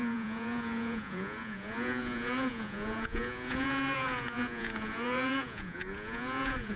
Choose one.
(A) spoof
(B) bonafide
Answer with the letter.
A